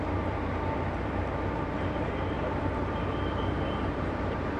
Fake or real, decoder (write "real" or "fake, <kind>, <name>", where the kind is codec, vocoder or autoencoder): fake, vocoder, BigVGAN v2